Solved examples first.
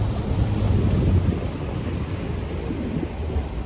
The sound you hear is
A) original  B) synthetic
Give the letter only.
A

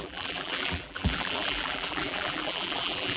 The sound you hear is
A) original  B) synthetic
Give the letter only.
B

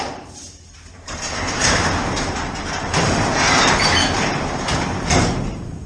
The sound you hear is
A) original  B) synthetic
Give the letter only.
B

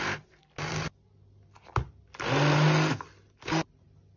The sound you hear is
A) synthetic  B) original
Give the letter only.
B